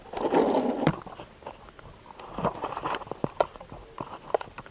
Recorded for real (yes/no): yes